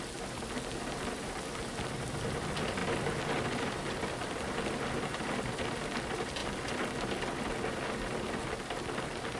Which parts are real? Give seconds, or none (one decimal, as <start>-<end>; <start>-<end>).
0.0-9.4

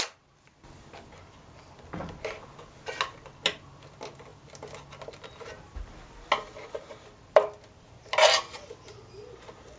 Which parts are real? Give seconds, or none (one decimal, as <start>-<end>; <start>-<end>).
0.0-9.8